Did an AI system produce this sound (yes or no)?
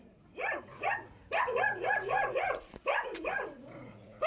yes